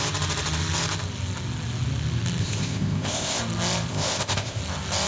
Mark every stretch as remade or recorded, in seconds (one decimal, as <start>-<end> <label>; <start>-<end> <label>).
0.0-2.4 recorded; 2.4-3.4 remade; 3.4-3.9 recorded; 3.9-4.6 remade; 4.6-5.1 recorded